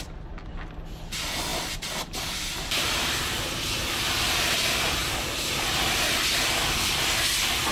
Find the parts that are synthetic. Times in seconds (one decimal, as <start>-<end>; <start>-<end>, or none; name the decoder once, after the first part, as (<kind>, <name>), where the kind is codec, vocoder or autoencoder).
1.5-4.6 (vocoder, BigVGAN v2); 5.0-5.5; 6.6-7.3